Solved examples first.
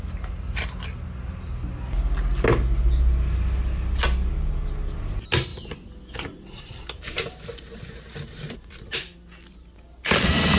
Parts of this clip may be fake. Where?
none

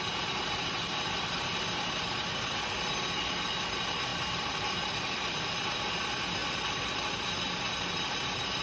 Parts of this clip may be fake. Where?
4.1-5.9 (vocoder, BigVGAN v2); 6.4-6.9

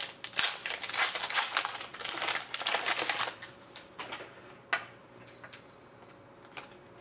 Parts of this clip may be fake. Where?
1.9-4.5 (vocoder, BigVGAN v2)